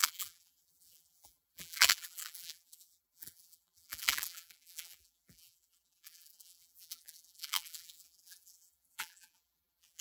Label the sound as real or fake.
fake